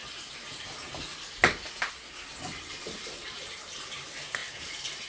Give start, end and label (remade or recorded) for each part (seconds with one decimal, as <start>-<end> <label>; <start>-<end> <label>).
0.0-2.8 recorded; 2.8-5.1 remade